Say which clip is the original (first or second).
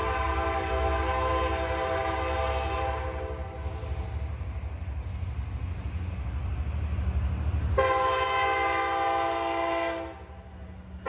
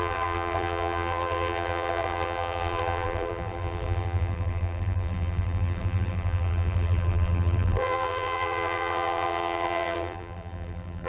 first